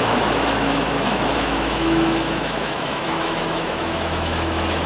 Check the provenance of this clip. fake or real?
fake